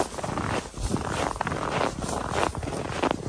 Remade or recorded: recorded